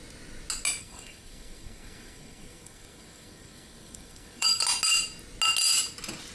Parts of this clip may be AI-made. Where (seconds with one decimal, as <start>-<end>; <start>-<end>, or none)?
0.8-4.6